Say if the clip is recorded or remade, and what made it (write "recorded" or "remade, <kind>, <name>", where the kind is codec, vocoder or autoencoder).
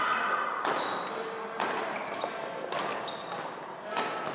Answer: recorded